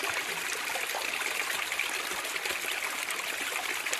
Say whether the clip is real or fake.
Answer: real